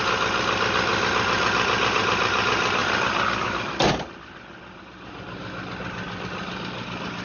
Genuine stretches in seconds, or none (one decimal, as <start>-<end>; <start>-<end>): 0.0-7.2